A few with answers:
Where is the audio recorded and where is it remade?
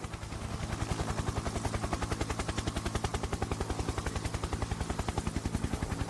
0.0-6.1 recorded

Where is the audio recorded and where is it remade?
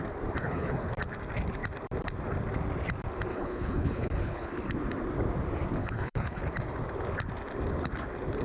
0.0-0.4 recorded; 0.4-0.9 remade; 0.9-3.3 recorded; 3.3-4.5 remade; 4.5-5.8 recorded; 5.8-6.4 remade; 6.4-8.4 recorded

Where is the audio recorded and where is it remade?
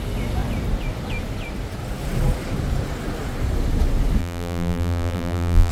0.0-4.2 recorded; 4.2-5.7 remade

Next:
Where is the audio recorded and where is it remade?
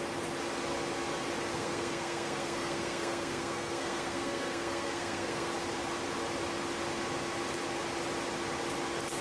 0.0-1.5 recorded; 1.5-5.5 remade; 5.5-9.2 recorded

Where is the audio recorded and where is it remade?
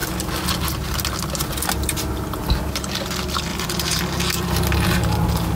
0.0-3.5 recorded; 3.5-4.0 remade; 4.0-5.6 recorded